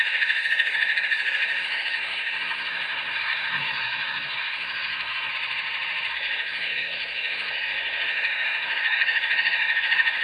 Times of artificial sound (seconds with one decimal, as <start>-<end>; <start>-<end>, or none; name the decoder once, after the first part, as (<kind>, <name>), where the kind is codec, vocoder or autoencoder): 0.0-5.3 (codec, SNAC); 6.1-10.2